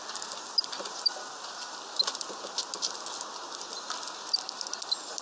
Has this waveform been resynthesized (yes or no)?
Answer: no